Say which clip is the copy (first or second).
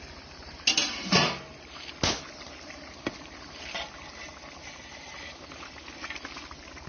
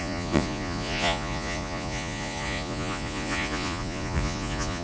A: second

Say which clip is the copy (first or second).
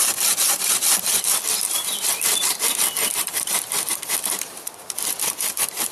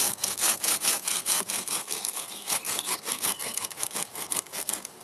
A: second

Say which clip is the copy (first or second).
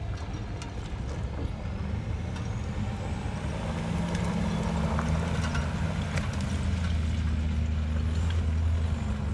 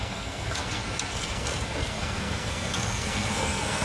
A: second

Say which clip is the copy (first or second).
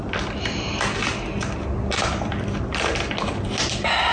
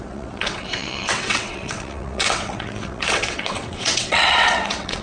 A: second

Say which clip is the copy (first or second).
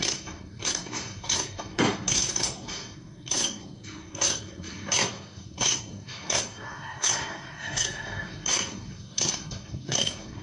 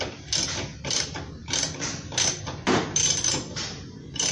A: first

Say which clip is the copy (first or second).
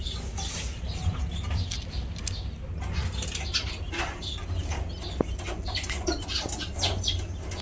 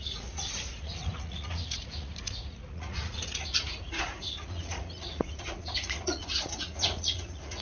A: second